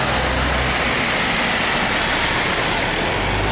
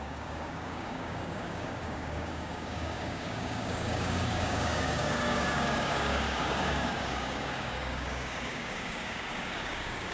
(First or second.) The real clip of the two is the first